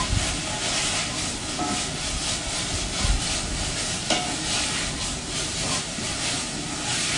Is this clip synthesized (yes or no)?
no